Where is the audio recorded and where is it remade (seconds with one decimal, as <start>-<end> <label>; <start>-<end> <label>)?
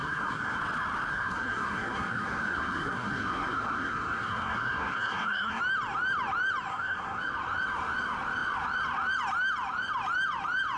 0.0-0.6 remade; 0.6-1.1 recorded; 1.1-5.6 remade; 5.6-6.7 recorded; 6.7-7.2 remade; 7.2-10.8 recorded